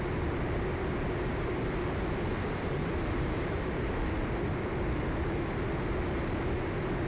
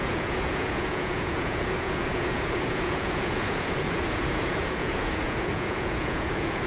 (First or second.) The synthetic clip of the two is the second